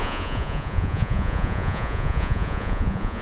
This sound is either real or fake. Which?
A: fake